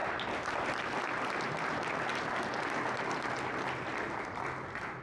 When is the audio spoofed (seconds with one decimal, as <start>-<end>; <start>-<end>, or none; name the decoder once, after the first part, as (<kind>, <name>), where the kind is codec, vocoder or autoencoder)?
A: none